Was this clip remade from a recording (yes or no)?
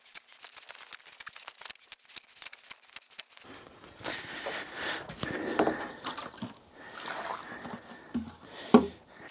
no